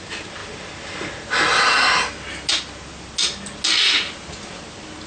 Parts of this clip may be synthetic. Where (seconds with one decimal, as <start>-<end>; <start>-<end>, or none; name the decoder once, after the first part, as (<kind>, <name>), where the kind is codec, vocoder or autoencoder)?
none